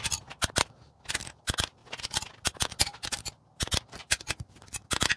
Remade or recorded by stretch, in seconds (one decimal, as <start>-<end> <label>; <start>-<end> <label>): 0.0-5.2 recorded